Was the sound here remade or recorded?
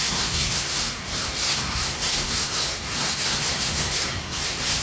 remade